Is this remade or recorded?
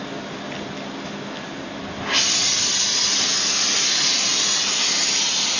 recorded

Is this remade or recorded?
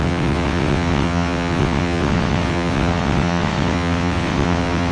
remade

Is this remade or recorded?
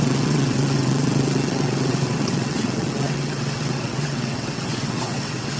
remade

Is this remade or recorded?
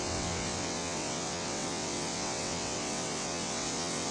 remade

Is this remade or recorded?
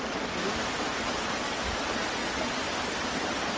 recorded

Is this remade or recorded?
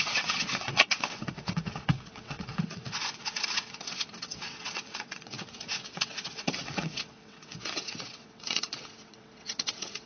remade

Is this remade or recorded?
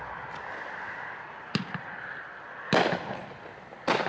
recorded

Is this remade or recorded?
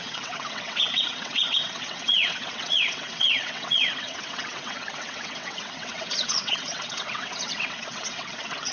remade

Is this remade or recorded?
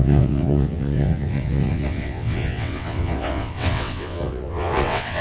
remade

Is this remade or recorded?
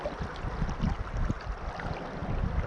recorded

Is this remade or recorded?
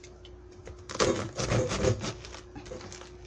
recorded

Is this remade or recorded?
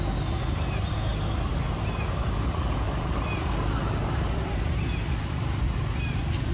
recorded